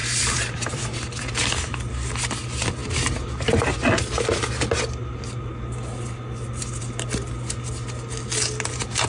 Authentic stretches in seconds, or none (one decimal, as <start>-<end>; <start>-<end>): 1.2-9.1